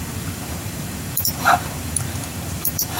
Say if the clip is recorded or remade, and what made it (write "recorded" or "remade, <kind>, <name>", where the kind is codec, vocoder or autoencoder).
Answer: remade, vocoder, BigVGAN v2